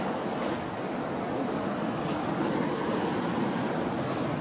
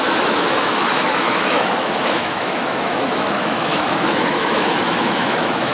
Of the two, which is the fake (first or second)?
second